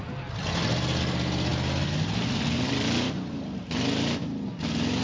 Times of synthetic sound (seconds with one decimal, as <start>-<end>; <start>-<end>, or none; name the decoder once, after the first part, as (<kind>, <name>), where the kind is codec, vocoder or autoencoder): none